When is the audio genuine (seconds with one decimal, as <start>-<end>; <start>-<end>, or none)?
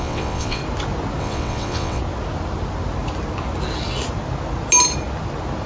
0.6-1.2; 2.0-5.7